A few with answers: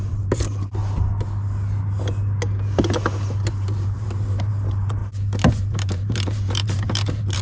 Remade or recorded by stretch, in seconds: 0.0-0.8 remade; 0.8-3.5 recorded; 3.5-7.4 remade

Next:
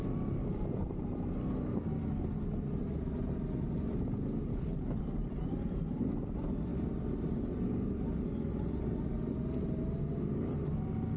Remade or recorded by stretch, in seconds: 0.0-4.5 recorded; 4.5-5.0 remade; 5.0-11.2 recorded

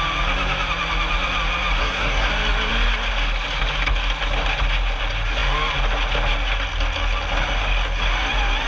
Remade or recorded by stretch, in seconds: 0.0-1.8 recorded; 1.8-2.3 remade; 2.3-8.7 recorded

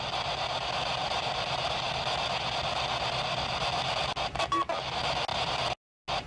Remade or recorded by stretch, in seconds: 0.0-6.3 recorded

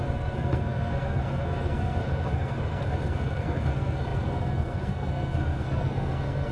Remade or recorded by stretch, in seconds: 0.0-6.5 remade

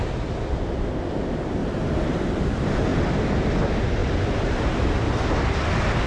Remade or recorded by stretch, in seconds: 0.0-1.6 recorded; 1.6-2.4 remade; 2.4-4.0 recorded; 4.0-4.7 remade; 4.7-6.1 recorded

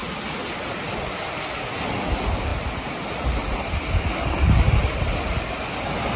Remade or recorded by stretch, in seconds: 0.0-6.2 recorded